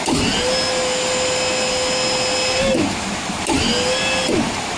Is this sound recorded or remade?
recorded